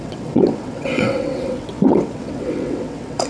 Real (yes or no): no